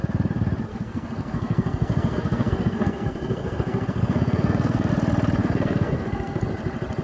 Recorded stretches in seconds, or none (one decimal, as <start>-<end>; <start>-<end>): 0.0-0.7; 4.9-5.4; 6.4-7.0